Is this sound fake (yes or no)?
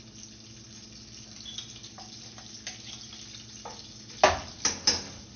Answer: no